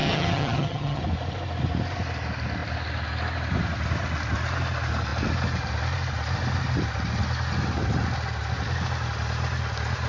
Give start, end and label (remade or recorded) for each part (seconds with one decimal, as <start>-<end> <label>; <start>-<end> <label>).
0.0-1.0 remade; 1.0-10.1 recorded